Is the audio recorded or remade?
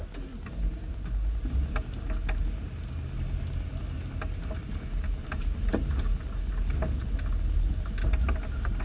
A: recorded